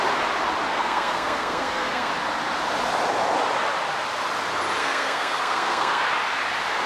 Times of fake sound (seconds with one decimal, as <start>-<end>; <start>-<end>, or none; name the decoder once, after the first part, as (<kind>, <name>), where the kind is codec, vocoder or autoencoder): 0.7-2.1 (codec, SNAC); 4.8-6.0